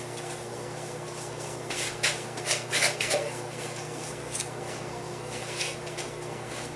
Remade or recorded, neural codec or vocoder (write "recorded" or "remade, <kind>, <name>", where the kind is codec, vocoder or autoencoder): remade, codec, SNAC